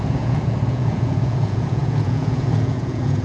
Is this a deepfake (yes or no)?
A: yes